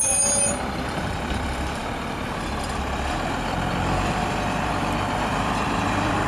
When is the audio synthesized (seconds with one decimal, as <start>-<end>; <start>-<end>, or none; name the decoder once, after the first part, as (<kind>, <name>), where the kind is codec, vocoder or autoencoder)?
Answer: 0.0-6.3 (vocoder, BigVGAN v2)

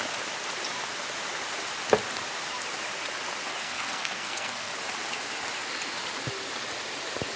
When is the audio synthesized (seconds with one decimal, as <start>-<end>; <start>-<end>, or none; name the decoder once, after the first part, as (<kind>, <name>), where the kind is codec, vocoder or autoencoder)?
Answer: 3.6-4.7 (codec, SNAC)

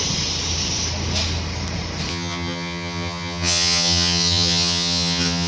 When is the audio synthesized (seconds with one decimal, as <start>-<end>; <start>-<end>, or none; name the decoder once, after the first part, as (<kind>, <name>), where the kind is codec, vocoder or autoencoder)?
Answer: 2.1-5.5 (vocoder, HiFi-GAN)